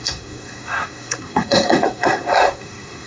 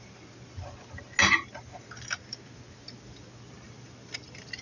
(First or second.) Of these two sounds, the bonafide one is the second